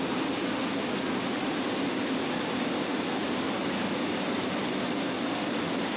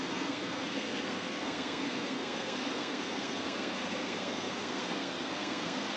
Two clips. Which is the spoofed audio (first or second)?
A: second